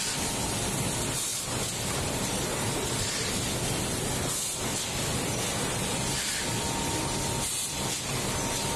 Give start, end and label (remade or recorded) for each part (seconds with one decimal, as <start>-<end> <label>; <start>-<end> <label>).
0.0-8.8 recorded